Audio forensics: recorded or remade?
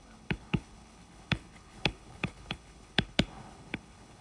remade